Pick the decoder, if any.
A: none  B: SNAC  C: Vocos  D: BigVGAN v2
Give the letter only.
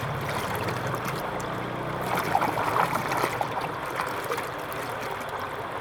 A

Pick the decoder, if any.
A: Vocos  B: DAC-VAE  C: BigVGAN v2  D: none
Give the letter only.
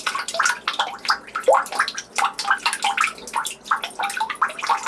D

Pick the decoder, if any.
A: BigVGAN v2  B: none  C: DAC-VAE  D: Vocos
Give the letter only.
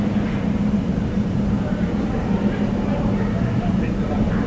A